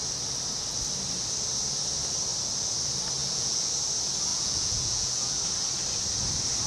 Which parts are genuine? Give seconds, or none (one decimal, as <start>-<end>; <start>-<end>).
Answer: 0.0-3.2; 3.7-4.3; 5.4-6.7